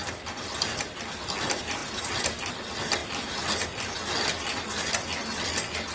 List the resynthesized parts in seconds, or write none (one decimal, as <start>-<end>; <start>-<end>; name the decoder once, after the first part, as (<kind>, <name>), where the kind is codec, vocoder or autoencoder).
0.0-1.2 (vocoder, BigVGAN v2); 1.8-2.5